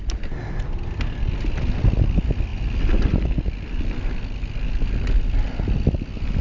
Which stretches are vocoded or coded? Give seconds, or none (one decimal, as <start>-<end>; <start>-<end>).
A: none